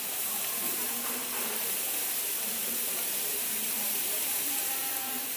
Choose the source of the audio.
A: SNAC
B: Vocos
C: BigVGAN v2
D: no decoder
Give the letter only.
C